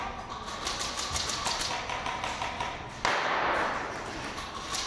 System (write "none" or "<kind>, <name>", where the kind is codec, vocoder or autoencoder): none